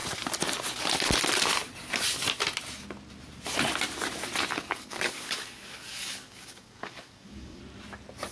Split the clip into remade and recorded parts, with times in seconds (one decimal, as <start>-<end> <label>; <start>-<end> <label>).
0.0-4.5 recorded; 4.5-7.6 remade; 7.6-8.3 recorded